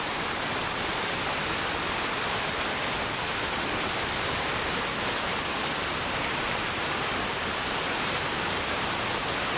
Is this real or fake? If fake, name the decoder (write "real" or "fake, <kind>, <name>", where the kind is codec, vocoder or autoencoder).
real